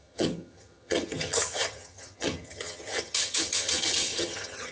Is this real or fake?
fake